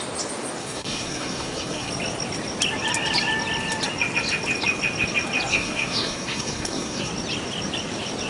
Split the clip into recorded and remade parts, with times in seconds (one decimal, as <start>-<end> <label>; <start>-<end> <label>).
0.0-0.6 recorded; 0.6-1.9 remade; 1.9-5.5 recorded; 5.5-7.1 remade; 7.1-8.3 recorded